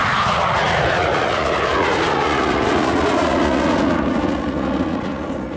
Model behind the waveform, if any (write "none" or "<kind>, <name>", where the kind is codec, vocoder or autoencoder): vocoder, Vocos